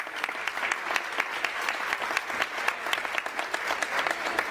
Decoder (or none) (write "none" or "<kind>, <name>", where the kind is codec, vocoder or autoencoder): none